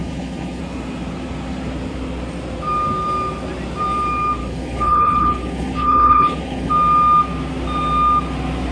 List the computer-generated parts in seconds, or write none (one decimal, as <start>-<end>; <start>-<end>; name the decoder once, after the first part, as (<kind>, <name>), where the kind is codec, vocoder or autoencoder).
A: 0.0-0.6 (codec, HILCodec); 4.4-6.7

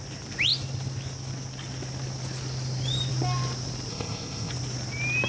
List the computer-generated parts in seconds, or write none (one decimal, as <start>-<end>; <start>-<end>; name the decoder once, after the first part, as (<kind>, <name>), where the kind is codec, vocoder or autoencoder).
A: 3.9-4.5 (codec, ZipCodec)

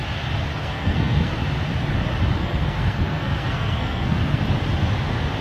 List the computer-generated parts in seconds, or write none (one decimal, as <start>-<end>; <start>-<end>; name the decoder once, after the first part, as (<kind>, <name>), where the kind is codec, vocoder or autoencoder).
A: 0.6-1.4 (codec, SNAC); 2.4-4.4

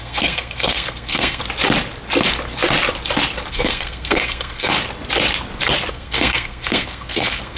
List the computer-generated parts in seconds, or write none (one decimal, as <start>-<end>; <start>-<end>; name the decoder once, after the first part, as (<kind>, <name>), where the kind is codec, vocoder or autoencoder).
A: 0.0-1.4 (codec, SNAC); 3.5-4.7; 5.9-7.6